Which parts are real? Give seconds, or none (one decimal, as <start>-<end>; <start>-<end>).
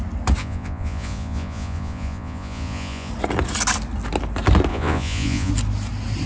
0.0-0.4; 3.1-4.7; 5.5-6.3